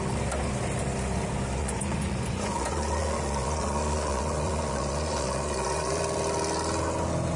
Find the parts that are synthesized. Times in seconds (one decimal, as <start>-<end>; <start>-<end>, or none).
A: 1.6-6.0